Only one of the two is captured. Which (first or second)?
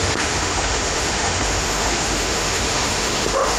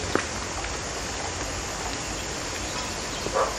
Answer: second